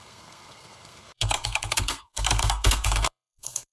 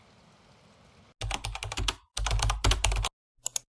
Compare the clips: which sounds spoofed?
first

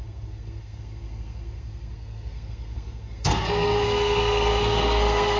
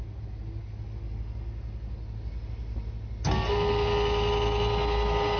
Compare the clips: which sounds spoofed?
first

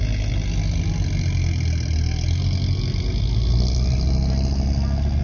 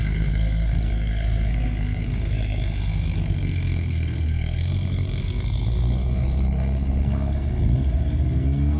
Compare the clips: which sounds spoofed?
second